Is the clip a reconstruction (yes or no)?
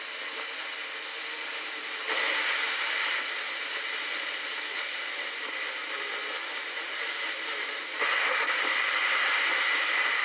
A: no